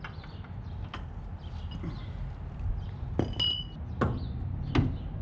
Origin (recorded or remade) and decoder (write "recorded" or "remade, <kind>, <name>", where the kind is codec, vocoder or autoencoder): recorded